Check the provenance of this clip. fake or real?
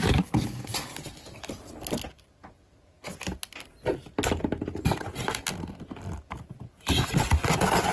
real